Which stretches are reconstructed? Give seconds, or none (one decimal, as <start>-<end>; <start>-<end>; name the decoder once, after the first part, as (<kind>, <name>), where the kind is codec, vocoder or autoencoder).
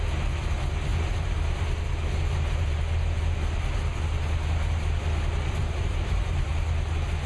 0.9-2.8 (vocoder, BigVGAN v2); 5.6-6.5